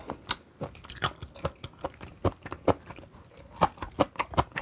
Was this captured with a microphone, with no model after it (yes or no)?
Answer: yes